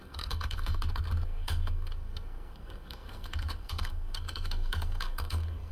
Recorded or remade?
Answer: remade